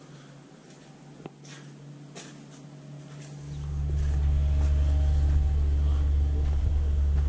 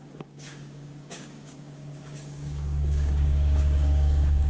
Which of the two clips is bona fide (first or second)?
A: first